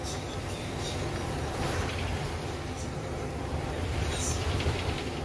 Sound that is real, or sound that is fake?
fake